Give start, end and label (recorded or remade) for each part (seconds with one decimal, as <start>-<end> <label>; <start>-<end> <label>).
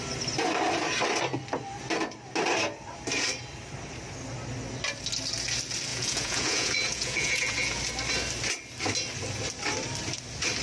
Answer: 0.0-5.9 recorded; 5.9-7.8 remade; 7.8-10.6 recorded